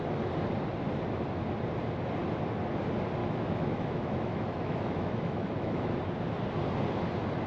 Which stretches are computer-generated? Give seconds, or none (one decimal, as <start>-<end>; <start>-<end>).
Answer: 3.2-6.0